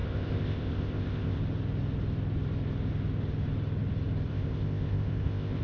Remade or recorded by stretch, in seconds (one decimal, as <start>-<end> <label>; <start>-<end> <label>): 0.0-1.4 remade; 1.4-4.3 recorded; 4.3-5.6 remade